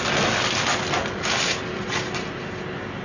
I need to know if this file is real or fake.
real